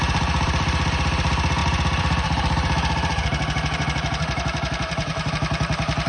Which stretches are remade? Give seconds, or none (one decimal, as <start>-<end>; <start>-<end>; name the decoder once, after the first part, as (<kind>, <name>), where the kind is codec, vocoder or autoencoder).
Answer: 0.0-6.1 (vocoder, BigVGAN v2)